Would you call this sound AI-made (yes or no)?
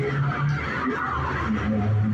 no